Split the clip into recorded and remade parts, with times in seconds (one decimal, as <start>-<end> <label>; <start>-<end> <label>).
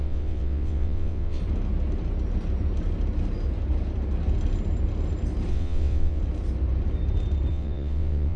0.0-1.4 remade; 1.4-5.5 recorded; 5.5-6.2 remade; 6.2-7.5 recorded; 7.5-8.4 remade